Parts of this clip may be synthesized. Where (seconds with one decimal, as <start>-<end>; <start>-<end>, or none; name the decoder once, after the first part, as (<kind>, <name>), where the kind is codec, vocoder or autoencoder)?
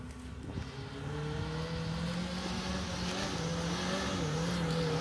none